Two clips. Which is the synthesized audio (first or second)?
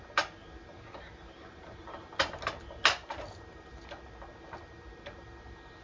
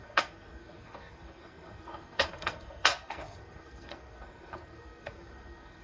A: second